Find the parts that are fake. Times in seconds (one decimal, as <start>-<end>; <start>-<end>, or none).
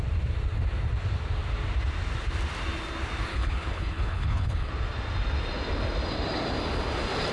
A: 3.3-4.7